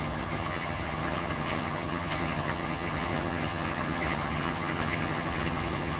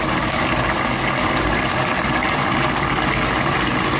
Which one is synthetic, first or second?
first